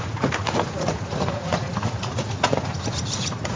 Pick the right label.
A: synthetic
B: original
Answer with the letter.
A